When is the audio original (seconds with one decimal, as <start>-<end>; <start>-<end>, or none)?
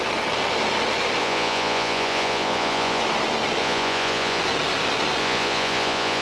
0.0-1.2; 3.0-3.6; 4.4-5.2